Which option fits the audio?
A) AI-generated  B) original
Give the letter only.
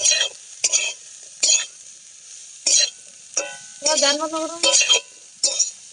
B